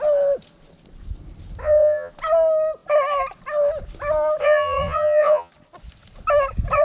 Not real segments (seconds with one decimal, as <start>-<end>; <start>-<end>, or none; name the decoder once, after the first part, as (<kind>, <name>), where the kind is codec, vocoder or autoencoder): 1.6-2.1 (vocoder, Vocos); 4.4-5.5